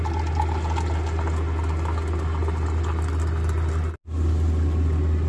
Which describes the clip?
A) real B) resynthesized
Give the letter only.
A